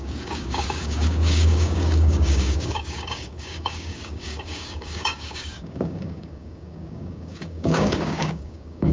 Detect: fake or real fake